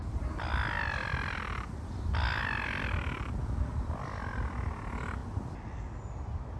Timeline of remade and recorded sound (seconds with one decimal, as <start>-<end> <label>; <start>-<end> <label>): 0.0-6.6 recorded